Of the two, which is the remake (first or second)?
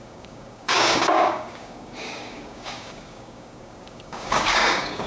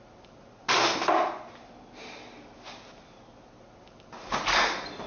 first